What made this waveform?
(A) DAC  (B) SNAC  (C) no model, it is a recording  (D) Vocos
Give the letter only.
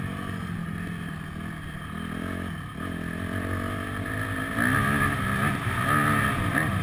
C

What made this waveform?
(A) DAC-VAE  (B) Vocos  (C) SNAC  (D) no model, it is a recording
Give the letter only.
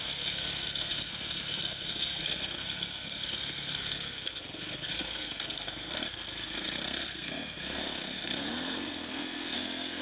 C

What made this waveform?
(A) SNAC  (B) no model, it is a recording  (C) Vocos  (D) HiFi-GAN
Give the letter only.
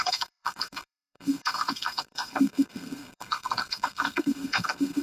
A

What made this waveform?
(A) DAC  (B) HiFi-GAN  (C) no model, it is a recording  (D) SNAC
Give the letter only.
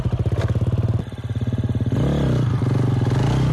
C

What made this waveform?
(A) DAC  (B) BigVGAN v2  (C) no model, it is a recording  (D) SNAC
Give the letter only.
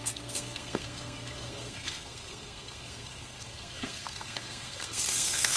D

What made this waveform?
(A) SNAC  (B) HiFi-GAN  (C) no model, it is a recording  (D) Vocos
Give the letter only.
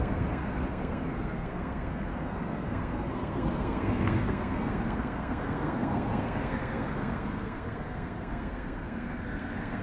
A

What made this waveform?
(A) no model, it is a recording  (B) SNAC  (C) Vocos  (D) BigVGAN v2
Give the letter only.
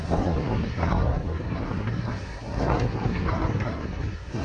B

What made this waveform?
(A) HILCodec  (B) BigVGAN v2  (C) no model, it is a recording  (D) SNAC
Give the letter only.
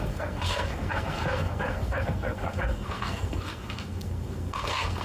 D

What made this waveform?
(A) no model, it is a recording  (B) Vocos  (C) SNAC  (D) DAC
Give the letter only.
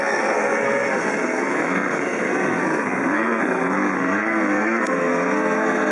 C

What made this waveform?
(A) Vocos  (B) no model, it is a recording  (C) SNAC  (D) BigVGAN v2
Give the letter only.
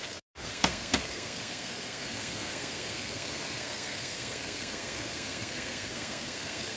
C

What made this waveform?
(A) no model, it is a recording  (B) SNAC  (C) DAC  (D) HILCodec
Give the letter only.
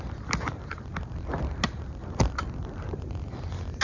A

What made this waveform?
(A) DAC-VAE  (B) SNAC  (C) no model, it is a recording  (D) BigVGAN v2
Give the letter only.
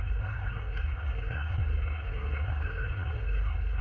B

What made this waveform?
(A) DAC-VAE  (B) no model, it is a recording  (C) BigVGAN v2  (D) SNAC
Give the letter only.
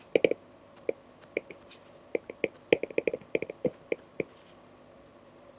B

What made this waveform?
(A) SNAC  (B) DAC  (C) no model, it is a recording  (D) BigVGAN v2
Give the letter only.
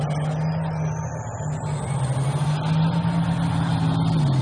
C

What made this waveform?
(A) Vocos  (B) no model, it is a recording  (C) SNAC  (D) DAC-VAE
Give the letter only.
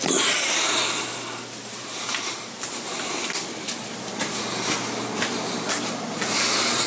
B